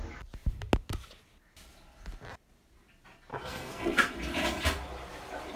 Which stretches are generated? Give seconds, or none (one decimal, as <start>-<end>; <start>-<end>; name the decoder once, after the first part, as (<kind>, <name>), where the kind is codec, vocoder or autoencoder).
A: 3.3-4.1 (codec, SNAC)